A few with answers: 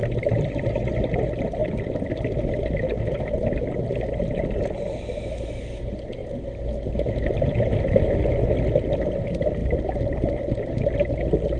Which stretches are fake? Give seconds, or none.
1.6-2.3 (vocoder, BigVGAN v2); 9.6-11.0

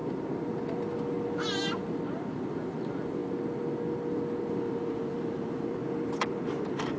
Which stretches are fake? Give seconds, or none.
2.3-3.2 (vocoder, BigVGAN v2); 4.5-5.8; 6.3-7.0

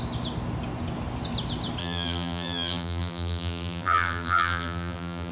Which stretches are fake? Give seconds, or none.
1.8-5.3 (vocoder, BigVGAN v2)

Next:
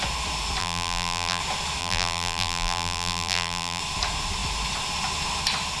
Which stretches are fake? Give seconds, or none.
0.6-1.4 (vocoder, BigVGAN v2); 1.8-3.8

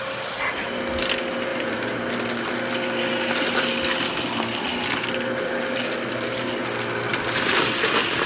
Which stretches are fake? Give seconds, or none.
1.5-2.0 (vocoder, BigVGAN v2)